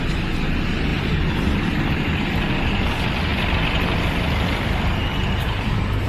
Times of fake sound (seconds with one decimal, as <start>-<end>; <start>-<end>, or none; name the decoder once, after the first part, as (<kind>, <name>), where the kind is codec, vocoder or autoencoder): 0.9-1.9 (vocoder, BigVGAN v2); 5.0-6.1